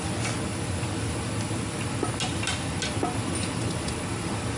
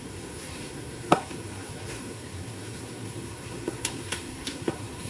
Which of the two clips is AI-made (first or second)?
second